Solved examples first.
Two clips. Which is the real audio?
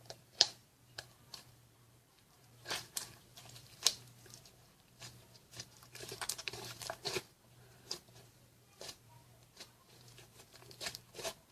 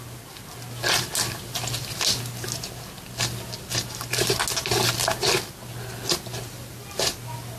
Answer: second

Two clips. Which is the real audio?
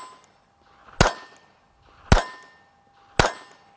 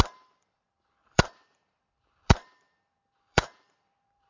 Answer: first